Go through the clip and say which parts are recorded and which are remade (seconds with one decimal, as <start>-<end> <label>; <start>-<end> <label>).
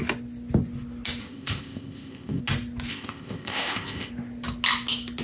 0.0-1.2 recorded; 1.2-2.4 remade; 2.4-2.9 recorded; 2.9-4.1 remade; 4.1-5.2 recorded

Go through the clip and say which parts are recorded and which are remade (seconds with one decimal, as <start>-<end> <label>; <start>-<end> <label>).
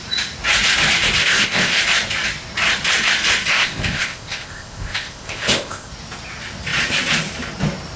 0.0-1.2 recorded; 1.2-1.8 remade; 1.8-3.5 recorded; 3.5-5.9 remade; 5.9-8.0 recorded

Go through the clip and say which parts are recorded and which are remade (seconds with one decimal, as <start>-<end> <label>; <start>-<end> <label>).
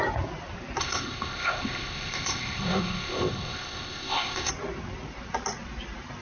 0.0-0.8 recorded; 0.8-4.5 remade; 4.5-6.2 recorded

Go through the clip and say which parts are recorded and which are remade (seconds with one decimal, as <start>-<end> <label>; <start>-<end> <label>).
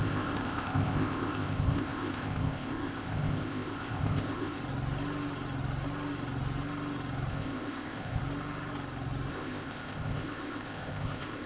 0.0-4.6 remade; 4.6-7.3 recorded; 7.3-8.2 remade; 8.2-9.3 recorded; 9.3-11.5 remade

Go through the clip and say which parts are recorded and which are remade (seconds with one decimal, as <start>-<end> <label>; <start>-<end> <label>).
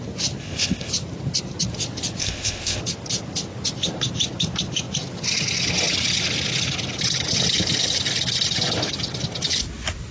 0.0-0.4 recorded; 0.4-0.9 remade; 0.9-2.2 recorded; 2.2-2.8 remade; 2.8-10.1 recorded